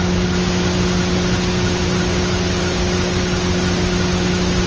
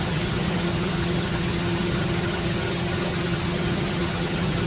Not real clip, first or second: second